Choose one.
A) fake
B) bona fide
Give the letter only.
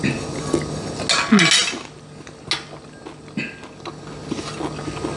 B